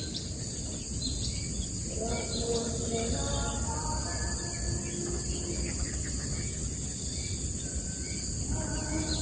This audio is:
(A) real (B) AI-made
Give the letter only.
A